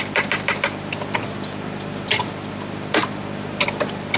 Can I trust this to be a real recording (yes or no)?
yes